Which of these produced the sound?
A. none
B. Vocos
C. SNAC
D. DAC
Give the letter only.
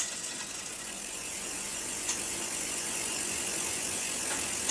B